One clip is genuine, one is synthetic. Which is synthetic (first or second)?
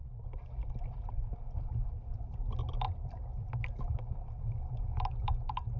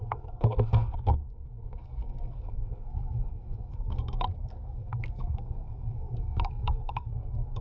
second